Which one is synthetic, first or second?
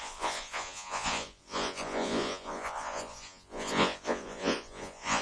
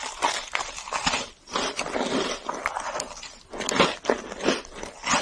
first